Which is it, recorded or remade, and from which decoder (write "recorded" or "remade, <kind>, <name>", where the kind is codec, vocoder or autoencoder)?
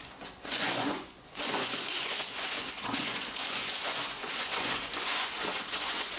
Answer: remade, vocoder, Vocos